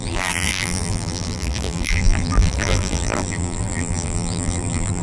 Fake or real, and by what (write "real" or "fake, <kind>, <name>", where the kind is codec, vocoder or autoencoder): fake, vocoder, BigVGAN v2